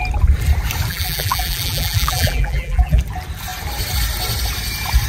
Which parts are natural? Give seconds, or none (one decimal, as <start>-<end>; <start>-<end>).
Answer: 0.0-0.9; 3.0-5.1